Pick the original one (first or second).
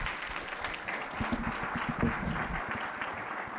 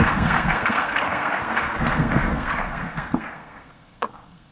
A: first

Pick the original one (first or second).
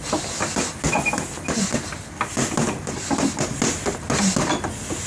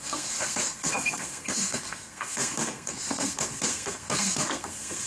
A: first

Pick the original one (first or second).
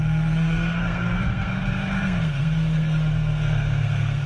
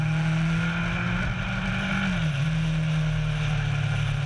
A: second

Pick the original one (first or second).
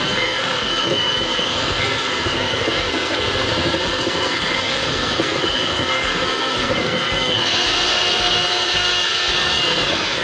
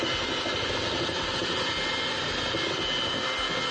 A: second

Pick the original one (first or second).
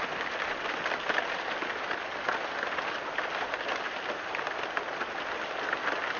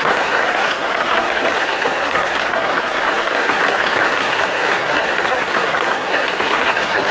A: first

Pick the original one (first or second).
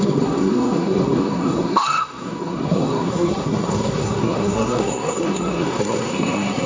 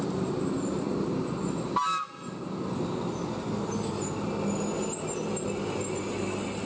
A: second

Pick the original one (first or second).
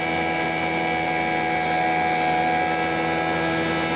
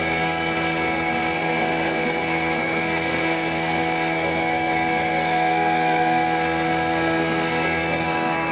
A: first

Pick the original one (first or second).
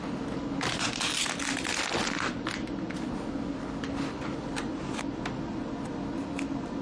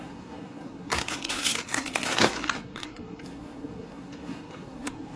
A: first